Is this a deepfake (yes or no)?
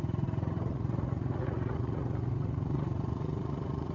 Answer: yes